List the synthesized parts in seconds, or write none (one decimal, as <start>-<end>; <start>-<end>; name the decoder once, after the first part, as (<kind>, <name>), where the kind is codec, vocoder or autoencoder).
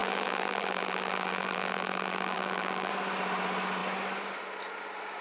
0.0-2.9 (vocoder, BigVGAN v2)